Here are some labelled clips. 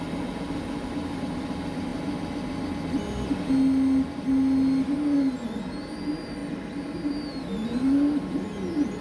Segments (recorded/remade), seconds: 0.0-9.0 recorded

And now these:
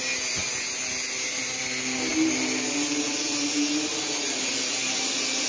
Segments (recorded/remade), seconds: 0.0-5.5 recorded

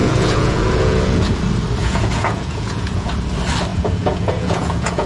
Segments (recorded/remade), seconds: 0.0-1.4 remade; 1.4-1.8 recorded; 1.8-3.1 remade; 3.1-3.7 recorded; 3.7-5.1 remade

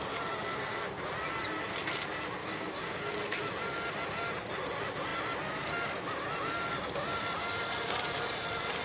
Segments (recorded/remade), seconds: 0.0-2.4 recorded; 2.4-3.1 remade; 3.1-8.8 recorded